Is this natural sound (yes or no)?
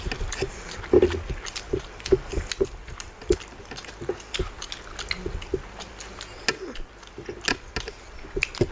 yes